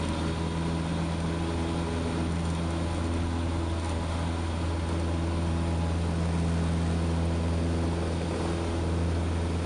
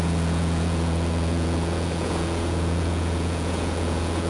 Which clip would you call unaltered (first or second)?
first